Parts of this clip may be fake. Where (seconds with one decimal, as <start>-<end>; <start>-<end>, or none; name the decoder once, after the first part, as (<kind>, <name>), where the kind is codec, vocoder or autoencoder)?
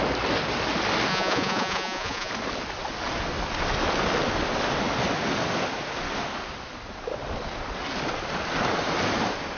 1.1-2.3 (vocoder, Vocos)